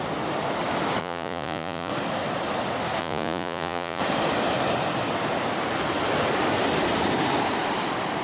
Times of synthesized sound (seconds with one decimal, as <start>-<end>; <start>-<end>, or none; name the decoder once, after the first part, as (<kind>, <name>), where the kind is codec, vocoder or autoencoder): 1.0-1.9 (vocoder, Vocos); 3.0-4.0